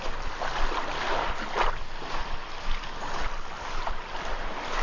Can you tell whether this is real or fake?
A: real